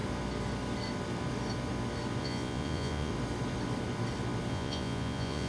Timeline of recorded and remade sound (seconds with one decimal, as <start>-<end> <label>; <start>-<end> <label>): 0.0-2.2 recorded; 2.2-3.1 remade; 3.1-4.5 recorded; 4.5-5.5 remade